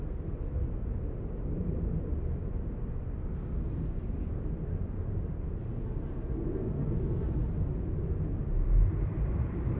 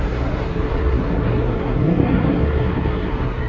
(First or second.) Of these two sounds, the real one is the first